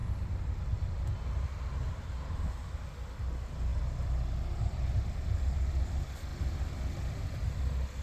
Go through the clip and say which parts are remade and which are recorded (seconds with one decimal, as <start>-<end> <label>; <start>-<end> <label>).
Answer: 0.0-3.7 recorded; 3.7-5.2 remade; 5.2-6.3 recorded; 6.3-7.5 remade; 7.5-8.0 recorded